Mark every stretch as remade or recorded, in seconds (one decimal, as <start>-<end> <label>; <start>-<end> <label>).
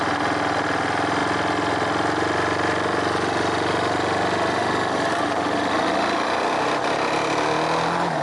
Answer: 0.0-8.2 recorded